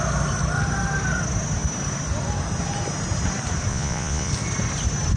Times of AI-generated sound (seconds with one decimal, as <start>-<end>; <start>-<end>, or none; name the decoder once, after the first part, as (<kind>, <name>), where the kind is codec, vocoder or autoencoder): 3.7-4.3 (vocoder, Vocos)